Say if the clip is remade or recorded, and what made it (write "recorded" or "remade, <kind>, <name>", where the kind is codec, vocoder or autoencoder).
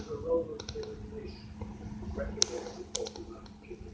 recorded